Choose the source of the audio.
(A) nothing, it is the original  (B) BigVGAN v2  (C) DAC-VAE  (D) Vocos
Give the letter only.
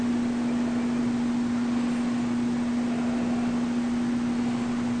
A